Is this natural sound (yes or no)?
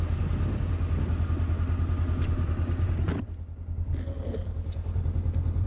yes